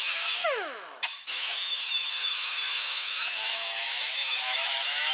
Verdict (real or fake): fake